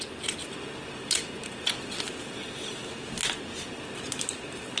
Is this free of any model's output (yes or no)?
yes